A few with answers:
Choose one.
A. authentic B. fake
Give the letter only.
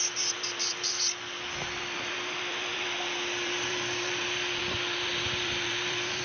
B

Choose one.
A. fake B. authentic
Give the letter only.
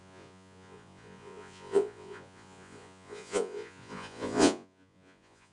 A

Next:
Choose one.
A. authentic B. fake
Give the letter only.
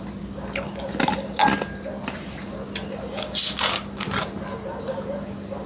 A